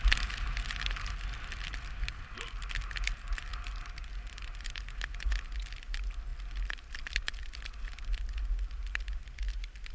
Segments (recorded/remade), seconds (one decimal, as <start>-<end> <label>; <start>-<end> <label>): 0.0-9.9 recorded